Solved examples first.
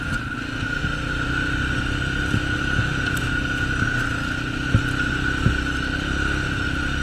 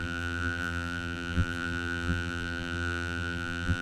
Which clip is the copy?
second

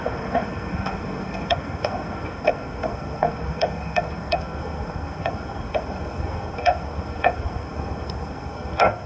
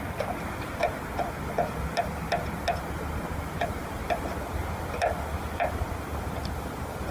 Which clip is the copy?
first